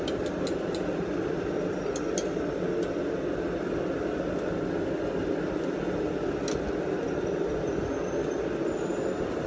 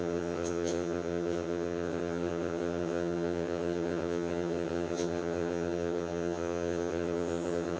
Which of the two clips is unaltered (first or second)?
first